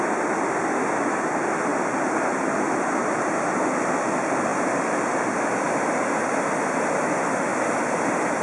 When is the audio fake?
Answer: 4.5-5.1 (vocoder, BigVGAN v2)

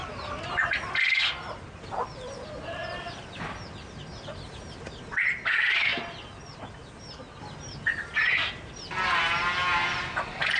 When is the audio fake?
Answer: none